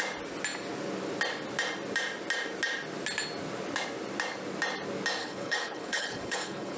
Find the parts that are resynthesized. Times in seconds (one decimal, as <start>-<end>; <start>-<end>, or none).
5.2-6.8